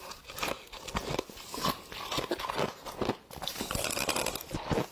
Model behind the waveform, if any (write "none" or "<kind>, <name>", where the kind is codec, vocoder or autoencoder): none